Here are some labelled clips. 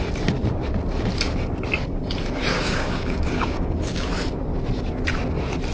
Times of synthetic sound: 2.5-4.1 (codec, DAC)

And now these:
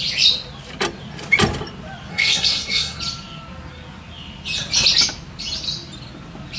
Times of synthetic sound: 2.1-3.0 (codec, SNAC)

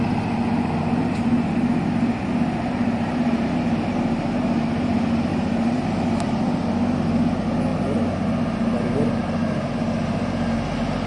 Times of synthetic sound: 1.0-1.5 (vocoder, BigVGAN v2); 5.3-6.4

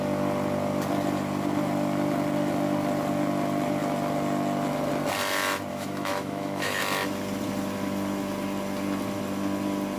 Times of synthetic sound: 5.7-6.8 (autoencoder, DAC-VAE)

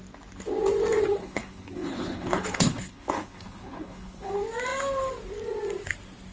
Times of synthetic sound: 1.2-4.3 (codec, HILCodec)

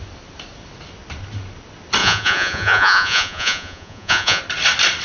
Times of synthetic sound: 2.0-4.4 (vocoder, Vocos)

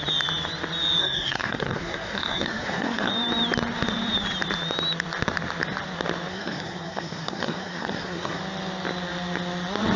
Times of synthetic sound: 1.0-3.1 (codec, SNAC); 6.3-8.4